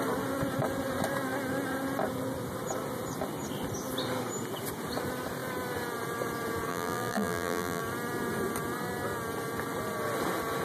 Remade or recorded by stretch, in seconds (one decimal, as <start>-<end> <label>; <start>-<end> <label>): 0.0-6.7 recorded; 6.7-7.8 remade; 7.8-10.6 recorded